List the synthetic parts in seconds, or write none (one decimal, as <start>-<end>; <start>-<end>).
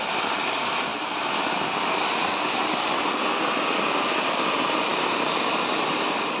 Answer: 0.0-0.9; 4.3-4.9; 5.9-6.4